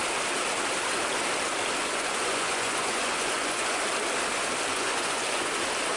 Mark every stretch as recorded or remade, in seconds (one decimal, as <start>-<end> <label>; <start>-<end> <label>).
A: 0.0-1.8 recorded; 1.8-3.8 remade; 3.8-4.7 recorded; 4.7-5.5 remade; 5.5-6.0 recorded